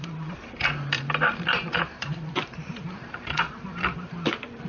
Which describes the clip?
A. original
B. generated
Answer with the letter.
B